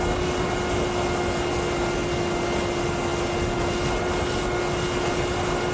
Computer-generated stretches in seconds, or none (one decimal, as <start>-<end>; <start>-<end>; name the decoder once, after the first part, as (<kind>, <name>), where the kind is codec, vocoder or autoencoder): none